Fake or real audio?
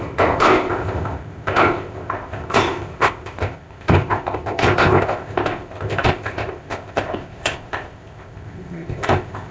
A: fake